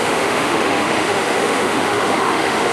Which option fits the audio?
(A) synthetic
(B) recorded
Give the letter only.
A